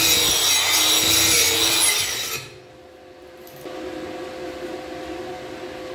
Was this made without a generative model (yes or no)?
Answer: yes